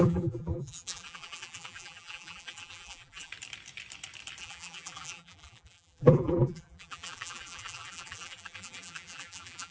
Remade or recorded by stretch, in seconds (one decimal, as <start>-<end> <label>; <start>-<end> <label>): 0.0-3.3 remade; 3.3-4.4 recorded; 4.4-9.7 remade